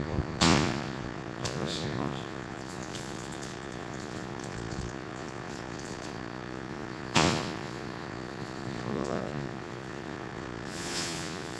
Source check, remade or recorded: remade